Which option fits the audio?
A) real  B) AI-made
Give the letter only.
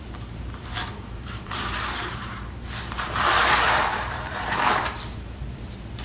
B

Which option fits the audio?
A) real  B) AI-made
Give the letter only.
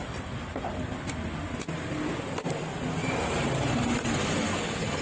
A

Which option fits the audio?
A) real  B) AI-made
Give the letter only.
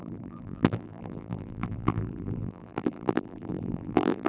B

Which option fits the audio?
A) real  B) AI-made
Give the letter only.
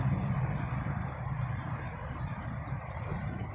B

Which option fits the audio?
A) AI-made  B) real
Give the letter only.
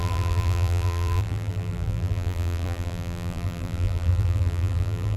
A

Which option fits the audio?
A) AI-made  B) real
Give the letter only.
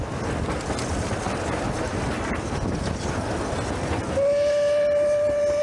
B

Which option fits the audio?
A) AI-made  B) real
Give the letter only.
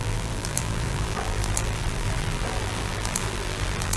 A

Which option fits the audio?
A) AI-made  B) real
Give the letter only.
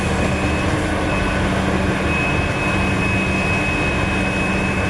B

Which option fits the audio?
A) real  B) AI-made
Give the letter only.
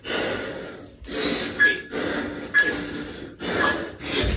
A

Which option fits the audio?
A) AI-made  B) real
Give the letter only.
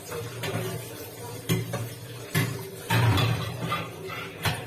A